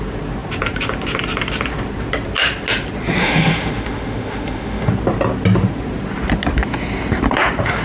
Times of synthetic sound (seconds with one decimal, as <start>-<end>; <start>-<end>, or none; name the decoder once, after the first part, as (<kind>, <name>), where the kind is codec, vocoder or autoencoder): 3.2-4.9 (autoencoder, DAC-VAE)